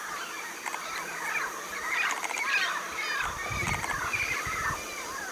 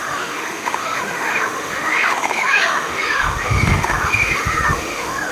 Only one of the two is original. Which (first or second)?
first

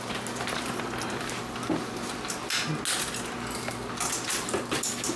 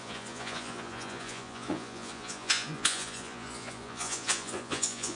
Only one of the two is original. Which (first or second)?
first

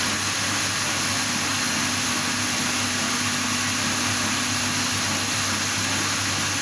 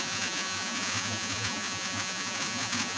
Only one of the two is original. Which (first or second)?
first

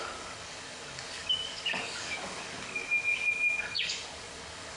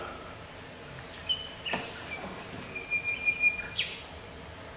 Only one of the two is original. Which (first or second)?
second